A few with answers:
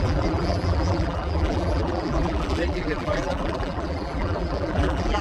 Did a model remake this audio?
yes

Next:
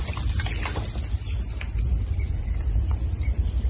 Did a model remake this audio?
yes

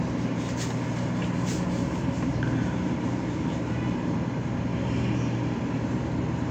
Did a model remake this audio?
yes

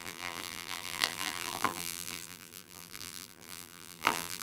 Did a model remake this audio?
yes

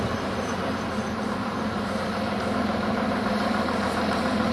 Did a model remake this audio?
yes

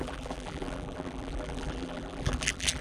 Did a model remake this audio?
yes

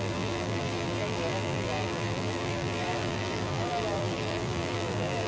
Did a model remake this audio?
yes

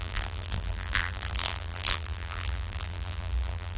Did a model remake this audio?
yes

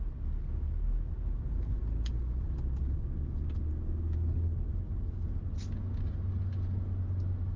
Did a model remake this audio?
no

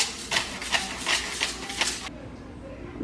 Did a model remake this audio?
no